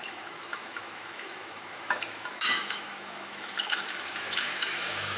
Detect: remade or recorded remade